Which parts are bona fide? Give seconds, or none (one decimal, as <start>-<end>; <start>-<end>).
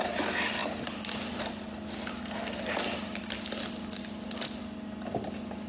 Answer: 0.0-5.7